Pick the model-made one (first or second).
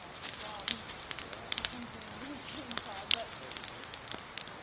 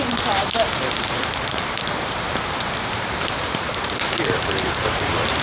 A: second